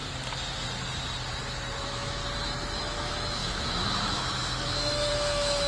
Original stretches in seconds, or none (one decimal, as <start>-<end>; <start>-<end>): 0.0-1.8; 2.2-2.8